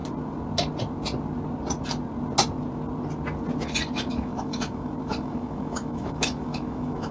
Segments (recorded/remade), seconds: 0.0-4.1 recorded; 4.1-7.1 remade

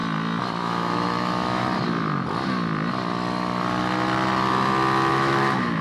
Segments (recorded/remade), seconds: 0.0-0.6 recorded; 0.6-1.6 remade; 1.6-5.1 recorded; 5.1-5.8 remade

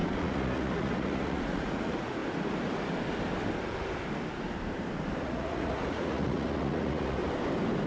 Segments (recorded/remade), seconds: 0.0-2.2 remade; 2.2-5.2 recorded; 5.2-7.2 remade; 7.2-7.9 recorded

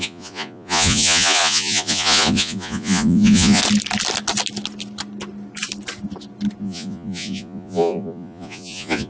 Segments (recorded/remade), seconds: 0.0-3.6 remade; 3.6-6.6 recorded; 6.6-9.1 remade